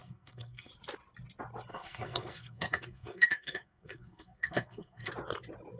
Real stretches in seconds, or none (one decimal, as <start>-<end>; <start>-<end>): 0.7-1.7; 5.1-5.8